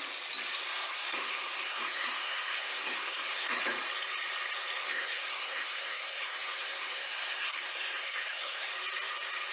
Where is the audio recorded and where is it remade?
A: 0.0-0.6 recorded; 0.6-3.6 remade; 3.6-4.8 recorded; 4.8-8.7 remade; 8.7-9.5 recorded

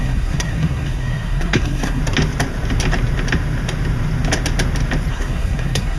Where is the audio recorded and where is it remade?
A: 0.0-2.0 remade; 2.0-5.1 recorded; 5.1-6.0 remade

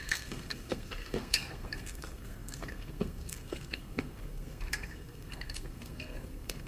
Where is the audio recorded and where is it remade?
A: 0.0-6.7 remade